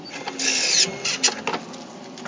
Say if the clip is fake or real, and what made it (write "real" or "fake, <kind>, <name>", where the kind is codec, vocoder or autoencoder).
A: real